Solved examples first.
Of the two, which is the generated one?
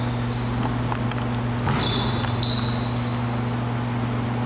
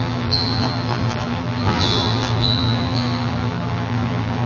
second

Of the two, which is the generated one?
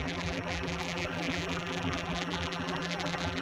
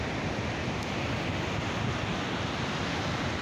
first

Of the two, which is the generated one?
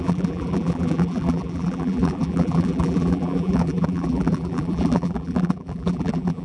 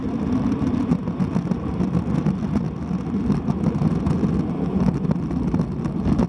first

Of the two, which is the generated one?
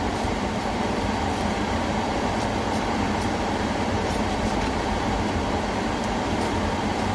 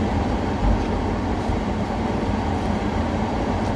first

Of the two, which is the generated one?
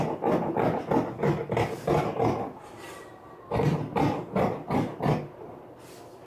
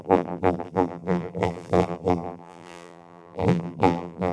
second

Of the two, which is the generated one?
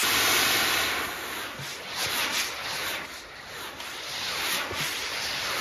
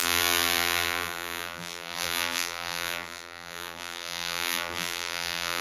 second